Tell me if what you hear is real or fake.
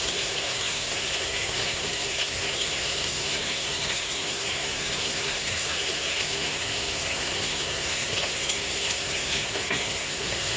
fake